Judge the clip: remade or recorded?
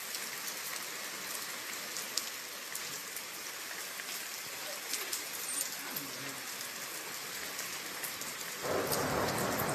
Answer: recorded